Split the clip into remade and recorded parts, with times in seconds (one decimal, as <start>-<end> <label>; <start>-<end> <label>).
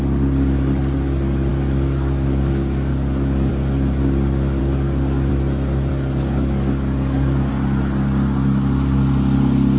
0.0-1.5 recorded; 1.5-3.5 remade; 3.5-4.6 recorded; 4.6-5.3 remade; 5.3-5.9 recorded; 5.9-7.5 remade; 7.5-9.8 recorded